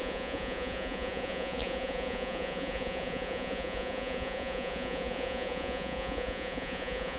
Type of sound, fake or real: fake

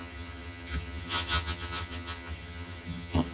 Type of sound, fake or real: fake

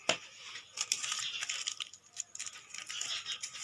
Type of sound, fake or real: real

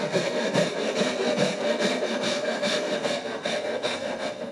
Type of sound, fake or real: fake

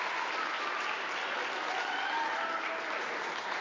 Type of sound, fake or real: real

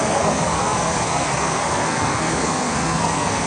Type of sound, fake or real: fake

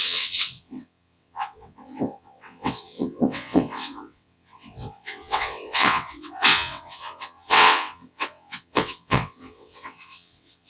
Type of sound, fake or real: fake